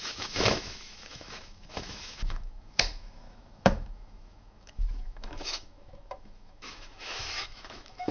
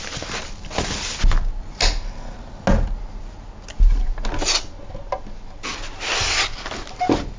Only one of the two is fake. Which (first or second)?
first